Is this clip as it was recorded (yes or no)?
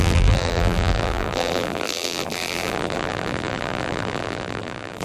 no